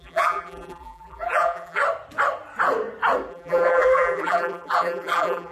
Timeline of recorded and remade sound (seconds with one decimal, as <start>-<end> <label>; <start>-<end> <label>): 0.0-1.8 remade; 1.8-3.3 recorded; 3.3-5.5 remade